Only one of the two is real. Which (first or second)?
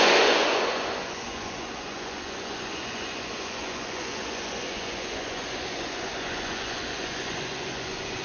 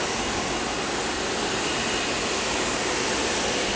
second